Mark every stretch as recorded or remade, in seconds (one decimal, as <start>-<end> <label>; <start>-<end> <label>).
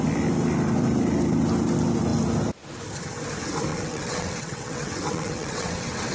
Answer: 0.0-3.7 recorded; 3.7-6.1 remade